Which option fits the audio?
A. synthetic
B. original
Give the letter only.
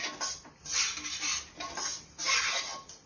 B